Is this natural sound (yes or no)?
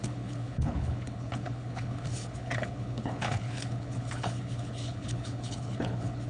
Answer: no